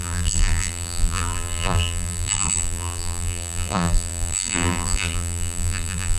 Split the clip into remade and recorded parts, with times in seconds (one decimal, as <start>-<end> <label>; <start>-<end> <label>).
0.0-6.2 remade